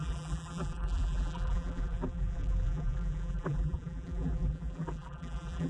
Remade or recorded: remade